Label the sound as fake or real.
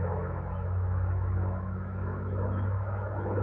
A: fake